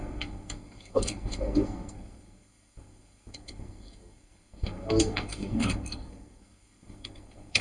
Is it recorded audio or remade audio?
remade